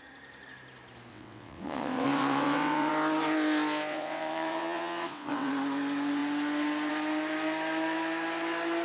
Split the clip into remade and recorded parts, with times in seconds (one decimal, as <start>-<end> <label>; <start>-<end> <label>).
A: 0.0-1.1 recorded; 1.1-2.9 remade; 2.9-3.9 recorded; 3.9-5.5 remade; 5.5-8.8 recorded